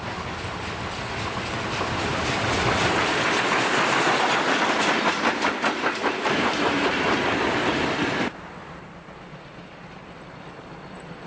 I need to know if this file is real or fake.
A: real